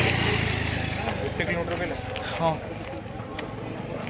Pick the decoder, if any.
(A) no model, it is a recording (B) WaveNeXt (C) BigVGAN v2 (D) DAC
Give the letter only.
A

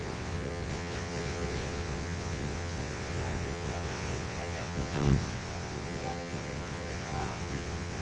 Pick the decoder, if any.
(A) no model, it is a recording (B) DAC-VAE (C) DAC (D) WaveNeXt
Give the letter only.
D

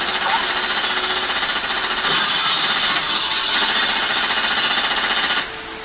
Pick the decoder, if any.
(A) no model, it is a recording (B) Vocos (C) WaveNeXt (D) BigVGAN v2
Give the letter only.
A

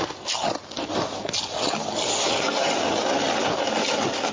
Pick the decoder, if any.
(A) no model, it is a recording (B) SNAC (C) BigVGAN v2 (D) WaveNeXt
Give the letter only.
A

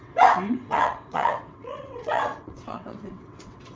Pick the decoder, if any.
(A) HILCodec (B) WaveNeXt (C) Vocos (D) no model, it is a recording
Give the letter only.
B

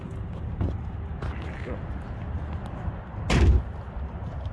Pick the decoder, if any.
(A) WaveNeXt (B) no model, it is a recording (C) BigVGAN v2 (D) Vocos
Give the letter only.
B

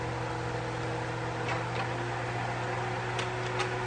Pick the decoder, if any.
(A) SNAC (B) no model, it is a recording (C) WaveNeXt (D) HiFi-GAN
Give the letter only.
B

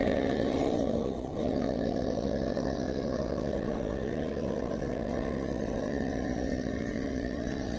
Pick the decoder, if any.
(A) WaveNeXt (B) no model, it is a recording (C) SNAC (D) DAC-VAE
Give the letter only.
A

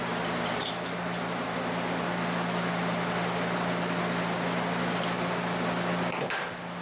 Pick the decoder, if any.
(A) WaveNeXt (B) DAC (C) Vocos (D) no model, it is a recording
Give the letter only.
D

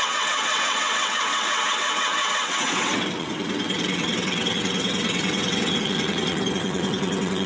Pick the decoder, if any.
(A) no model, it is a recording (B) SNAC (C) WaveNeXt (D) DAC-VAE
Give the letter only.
C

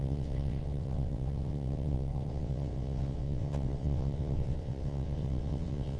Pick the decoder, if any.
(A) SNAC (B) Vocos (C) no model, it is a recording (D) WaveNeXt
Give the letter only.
D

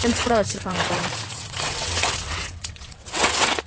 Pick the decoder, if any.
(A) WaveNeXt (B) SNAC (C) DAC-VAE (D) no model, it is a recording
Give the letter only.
A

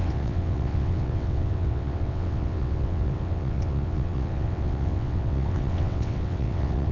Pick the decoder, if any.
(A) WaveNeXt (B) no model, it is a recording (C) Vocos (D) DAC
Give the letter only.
A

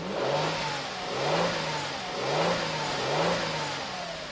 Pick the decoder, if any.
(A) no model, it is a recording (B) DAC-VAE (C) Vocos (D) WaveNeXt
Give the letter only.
A